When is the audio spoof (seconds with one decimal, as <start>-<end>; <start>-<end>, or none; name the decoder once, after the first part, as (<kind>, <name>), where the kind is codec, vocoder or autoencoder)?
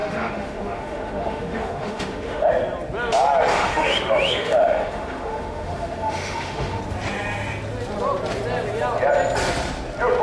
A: 0.0-2.5 (autoencoder, DAC-VAE); 3.5-6.8